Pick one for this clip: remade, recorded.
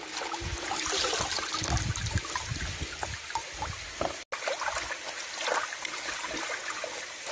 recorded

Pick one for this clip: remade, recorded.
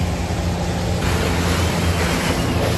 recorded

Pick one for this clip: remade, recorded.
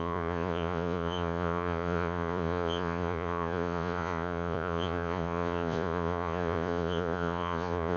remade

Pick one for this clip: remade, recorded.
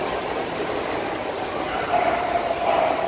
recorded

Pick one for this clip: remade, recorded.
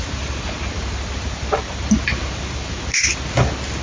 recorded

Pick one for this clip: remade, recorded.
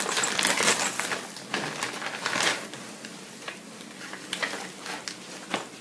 recorded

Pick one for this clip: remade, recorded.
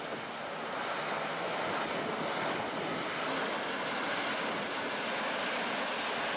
recorded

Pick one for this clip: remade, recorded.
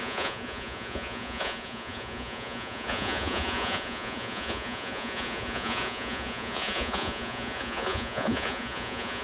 remade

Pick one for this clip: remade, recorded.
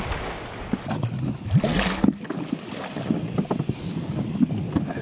recorded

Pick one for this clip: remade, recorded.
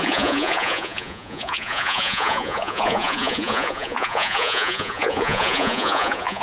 remade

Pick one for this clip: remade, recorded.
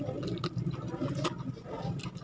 recorded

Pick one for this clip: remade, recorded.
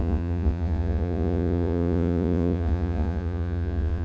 remade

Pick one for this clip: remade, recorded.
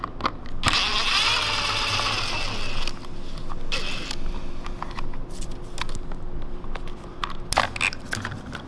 recorded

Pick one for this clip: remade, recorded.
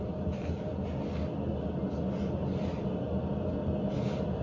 recorded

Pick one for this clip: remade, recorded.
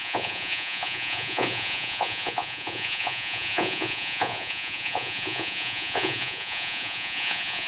remade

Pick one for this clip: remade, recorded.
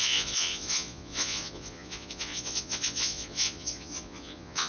remade